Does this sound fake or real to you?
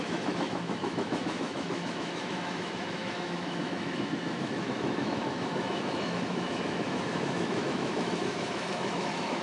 fake